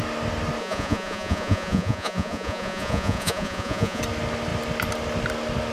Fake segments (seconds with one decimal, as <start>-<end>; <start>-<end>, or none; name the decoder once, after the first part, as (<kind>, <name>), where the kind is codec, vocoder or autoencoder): 0.6-4.0 (vocoder, Vocos)